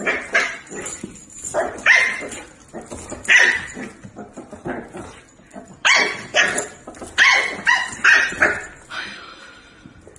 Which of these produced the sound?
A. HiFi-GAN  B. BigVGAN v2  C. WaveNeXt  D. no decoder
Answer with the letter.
D